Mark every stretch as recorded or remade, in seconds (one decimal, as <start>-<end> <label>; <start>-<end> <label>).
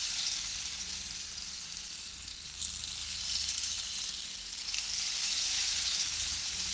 0.0-5.2 recorded; 5.2-6.7 remade